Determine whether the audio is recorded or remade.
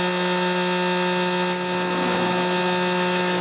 recorded